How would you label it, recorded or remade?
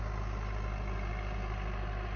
recorded